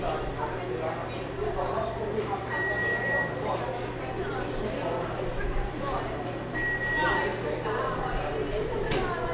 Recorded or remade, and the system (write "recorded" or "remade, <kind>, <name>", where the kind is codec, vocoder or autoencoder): recorded